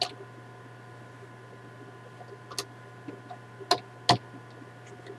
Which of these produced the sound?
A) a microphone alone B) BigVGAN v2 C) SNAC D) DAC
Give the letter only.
A